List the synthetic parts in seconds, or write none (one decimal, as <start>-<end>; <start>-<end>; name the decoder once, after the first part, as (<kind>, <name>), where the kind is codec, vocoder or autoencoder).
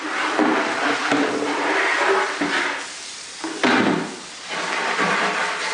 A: 0.0-1.9 (vocoder, BigVGAN v2); 5.3-5.7